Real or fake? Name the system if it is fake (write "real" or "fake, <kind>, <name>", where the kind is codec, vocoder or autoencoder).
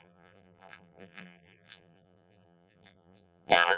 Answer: fake, vocoder, BigVGAN v2